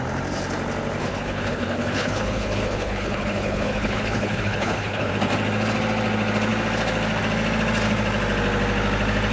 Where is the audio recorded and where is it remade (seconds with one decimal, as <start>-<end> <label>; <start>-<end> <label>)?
0.0-1.0 recorded; 1.0-5.1 remade; 5.1-9.3 recorded